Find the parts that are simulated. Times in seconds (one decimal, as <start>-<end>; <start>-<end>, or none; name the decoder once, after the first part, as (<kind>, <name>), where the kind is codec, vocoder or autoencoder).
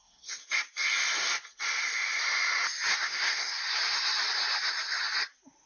0.0-0.4 (codec, SNAC); 2.9-3.6